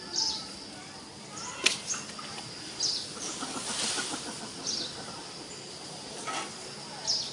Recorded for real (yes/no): yes